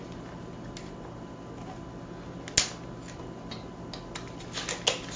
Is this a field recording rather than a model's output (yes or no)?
yes